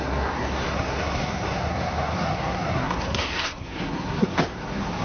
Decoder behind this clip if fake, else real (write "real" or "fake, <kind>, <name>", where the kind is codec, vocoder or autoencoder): fake, codec, SNAC